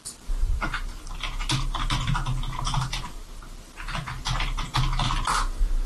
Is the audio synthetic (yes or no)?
no